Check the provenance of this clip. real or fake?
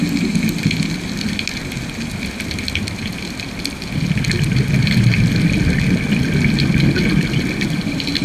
real